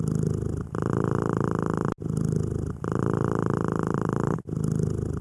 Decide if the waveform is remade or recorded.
recorded